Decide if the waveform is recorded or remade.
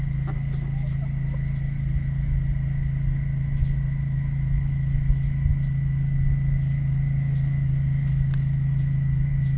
recorded